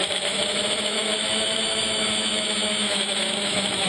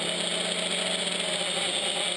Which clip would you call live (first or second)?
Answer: second